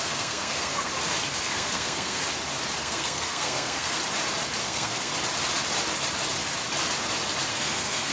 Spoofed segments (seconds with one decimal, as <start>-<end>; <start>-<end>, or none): 0.0-0.9; 1.4-2.2; 2.8-4.0; 4.6-5.1; 7.5-8.1